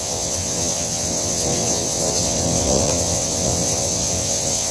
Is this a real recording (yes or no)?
no